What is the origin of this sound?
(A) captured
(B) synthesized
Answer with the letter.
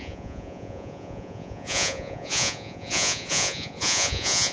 B